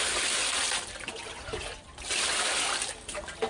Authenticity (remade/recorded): recorded